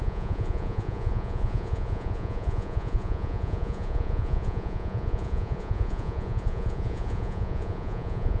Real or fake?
fake